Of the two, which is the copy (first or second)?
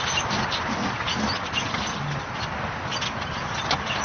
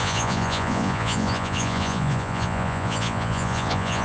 second